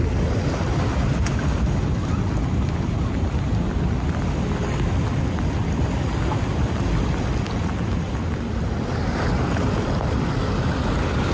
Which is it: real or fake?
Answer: real